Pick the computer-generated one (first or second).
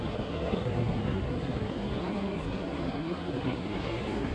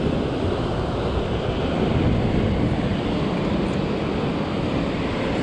first